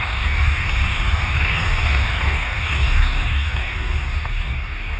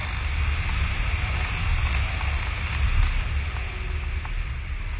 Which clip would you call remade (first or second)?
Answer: first